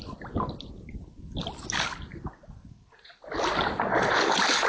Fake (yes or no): no